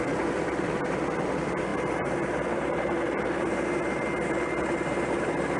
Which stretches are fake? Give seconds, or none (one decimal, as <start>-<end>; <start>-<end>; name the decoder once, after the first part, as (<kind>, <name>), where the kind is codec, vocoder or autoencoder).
0.0-0.8 (vocoder, BigVGAN v2)